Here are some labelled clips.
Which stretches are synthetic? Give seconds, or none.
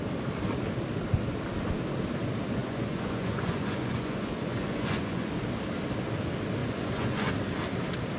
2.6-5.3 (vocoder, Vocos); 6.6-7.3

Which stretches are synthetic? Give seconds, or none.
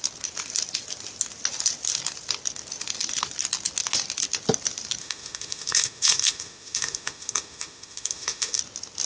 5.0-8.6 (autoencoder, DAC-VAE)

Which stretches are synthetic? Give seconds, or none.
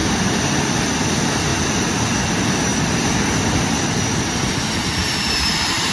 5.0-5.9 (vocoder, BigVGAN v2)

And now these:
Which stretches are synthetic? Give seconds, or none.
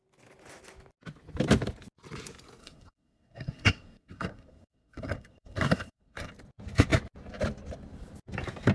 2.6-6.3 (codec, SNAC)